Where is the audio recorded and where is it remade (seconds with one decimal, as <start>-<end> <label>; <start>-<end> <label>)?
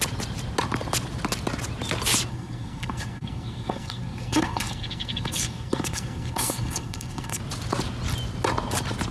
0.0-2.3 recorded; 2.3-7.4 remade; 7.4-9.1 recorded